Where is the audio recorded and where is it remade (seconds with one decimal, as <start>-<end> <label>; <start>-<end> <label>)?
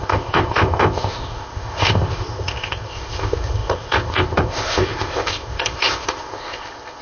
0.0-7.0 remade